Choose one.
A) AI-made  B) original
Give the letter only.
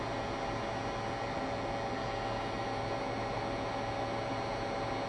B